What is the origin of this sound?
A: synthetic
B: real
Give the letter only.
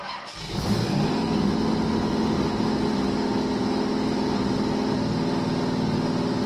B